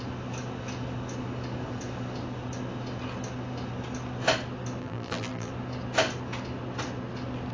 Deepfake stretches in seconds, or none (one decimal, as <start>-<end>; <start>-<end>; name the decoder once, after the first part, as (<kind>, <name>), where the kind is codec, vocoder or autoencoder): 4.8-5.5 (vocoder, BigVGAN v2)

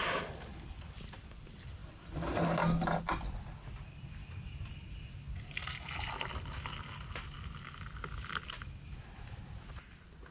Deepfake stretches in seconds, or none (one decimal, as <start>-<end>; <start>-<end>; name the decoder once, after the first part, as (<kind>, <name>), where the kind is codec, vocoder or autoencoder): none

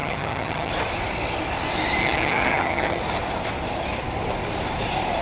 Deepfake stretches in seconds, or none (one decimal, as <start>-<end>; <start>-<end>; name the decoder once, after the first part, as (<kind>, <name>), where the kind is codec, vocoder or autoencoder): 0.0-0.7 (vocoder, HiFi-GAN); 2.0-3.0

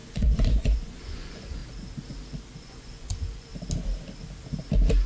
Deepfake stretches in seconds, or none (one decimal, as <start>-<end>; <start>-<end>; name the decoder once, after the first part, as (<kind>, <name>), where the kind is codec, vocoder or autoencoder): 0.0-1.6 (vocoder, Vocos); 2.6-3.5

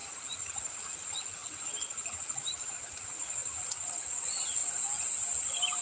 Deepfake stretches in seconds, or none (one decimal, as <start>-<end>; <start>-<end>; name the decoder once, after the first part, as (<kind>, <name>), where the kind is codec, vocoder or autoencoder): 0.0-1.4 (vocoder, Vocos); 2.7-4.6

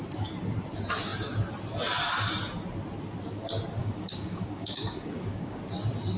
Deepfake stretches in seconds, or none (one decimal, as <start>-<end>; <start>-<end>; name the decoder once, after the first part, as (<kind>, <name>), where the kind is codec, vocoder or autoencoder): 3.8-5.6 (codec, DAC)

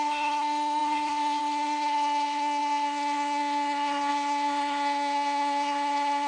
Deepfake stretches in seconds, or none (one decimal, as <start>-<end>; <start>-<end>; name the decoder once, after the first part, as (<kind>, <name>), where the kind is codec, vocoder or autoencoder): 0.0-6.3 (codec, SNAC)

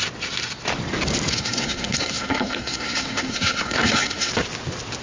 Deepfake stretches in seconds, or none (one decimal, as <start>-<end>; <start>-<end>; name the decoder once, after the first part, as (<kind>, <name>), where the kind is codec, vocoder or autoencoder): 1.3-4.3 (codec, SNAC)